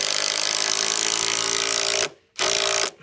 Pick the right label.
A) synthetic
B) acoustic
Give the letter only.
B